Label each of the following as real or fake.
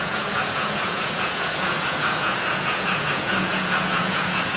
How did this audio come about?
fake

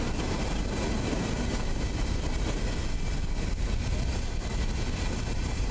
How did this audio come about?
real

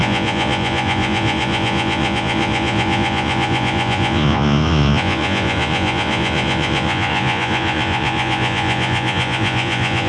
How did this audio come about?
fake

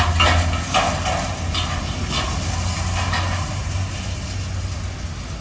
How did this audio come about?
real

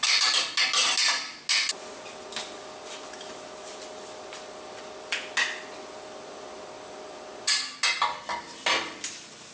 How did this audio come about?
real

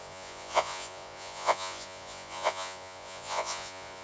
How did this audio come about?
fake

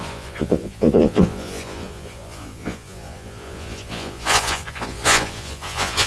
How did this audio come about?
fake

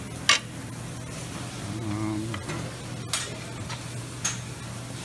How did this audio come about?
real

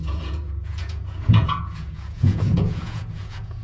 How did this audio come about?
fake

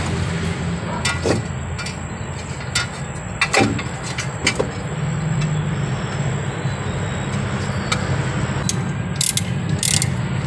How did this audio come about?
real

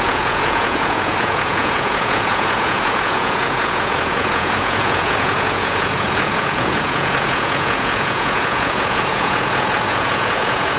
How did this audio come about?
fake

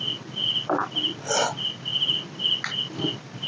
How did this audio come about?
real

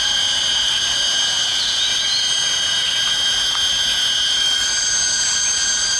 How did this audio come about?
real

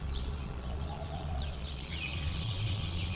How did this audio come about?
fake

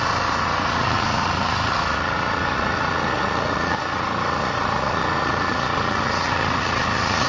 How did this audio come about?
fake